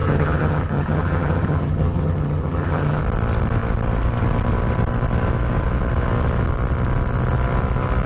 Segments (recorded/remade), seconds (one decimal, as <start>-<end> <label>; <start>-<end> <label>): 0.0-3.0 remade; 3.0-8.1 recorded